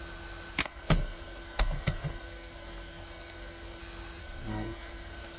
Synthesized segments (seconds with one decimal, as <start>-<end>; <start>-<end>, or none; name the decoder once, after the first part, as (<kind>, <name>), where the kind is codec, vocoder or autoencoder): 0.6-3.8 (codec, SNAC); 4.2-5.4